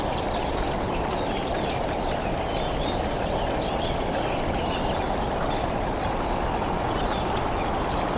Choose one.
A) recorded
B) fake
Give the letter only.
A